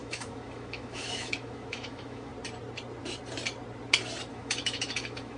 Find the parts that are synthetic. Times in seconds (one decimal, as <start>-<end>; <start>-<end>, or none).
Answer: 0.0-2.3; 4.3-5.4